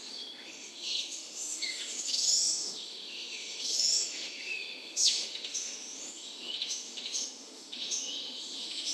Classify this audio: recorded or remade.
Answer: remade